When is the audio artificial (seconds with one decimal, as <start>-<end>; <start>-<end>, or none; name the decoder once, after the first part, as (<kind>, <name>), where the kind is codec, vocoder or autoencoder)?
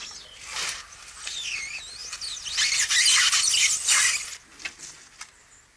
none